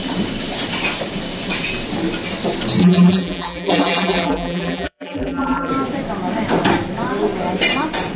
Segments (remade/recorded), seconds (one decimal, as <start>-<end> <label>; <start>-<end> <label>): 0.0-2.8 recorded; 2.8-5.7 remade; 5.7-8.2 recorded